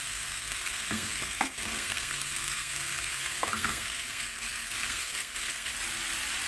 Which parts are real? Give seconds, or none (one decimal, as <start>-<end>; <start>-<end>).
5.7-6.5